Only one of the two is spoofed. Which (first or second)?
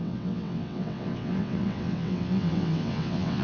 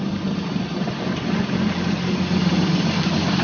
first